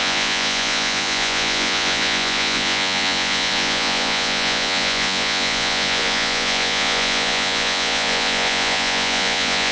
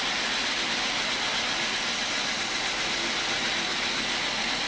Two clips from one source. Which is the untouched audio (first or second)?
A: second